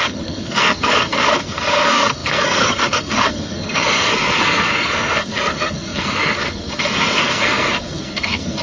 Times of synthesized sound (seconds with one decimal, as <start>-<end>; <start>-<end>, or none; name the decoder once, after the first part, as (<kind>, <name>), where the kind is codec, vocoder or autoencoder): 0.0-8.6 (codec, SNAC)